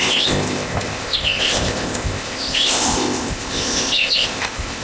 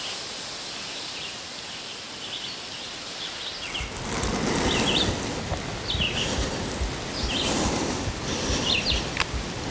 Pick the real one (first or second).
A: second